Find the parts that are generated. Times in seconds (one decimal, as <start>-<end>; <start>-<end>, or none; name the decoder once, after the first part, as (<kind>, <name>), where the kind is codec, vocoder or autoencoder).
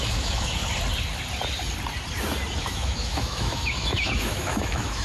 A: 0.0-0.6 (autoencoder, DAC-VAE); 2.6-5.0